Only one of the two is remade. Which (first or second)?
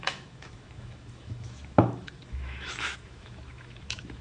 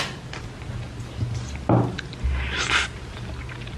first